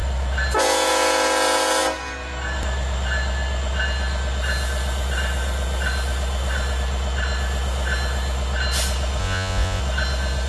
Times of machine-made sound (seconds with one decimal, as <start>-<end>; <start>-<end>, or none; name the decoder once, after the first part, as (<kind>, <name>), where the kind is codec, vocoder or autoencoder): 9.2-9.8 (vocoder, Vocos)